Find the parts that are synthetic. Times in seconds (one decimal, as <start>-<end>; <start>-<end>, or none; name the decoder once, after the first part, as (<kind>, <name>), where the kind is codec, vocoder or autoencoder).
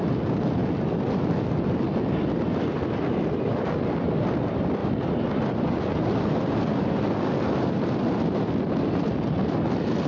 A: none